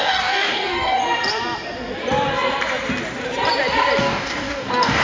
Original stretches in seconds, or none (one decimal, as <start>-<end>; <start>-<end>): 1.0-4.0